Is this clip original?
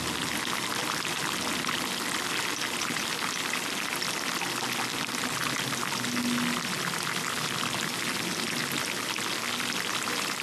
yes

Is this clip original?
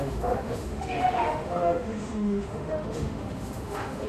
no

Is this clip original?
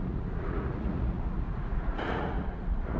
no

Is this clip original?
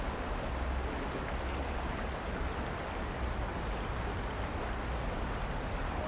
yes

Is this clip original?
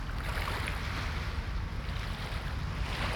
yes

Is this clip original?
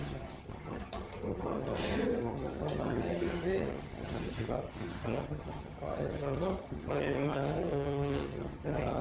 no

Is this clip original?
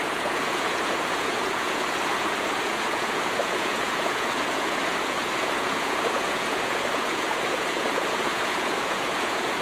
no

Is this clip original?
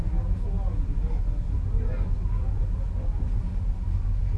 yes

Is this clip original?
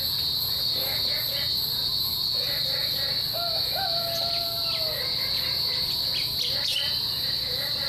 yes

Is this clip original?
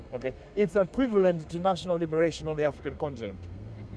no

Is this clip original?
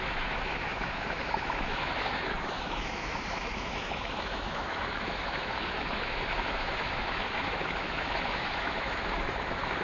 no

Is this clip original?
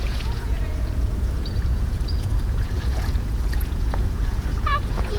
no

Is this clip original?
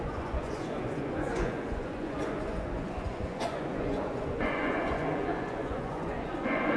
no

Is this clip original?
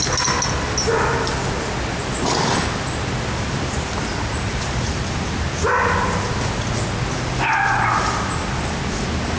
yes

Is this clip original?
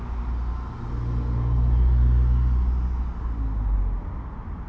yes